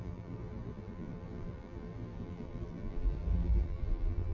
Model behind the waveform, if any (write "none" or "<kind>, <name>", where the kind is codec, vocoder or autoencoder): vocoder, BigVGAN v2